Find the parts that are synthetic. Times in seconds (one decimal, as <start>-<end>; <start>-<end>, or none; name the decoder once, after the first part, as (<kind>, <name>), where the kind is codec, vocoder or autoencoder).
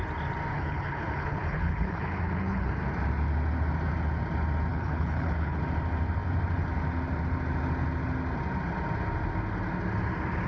0.5-2.7 (codec, HILCodec); 4.7-5.6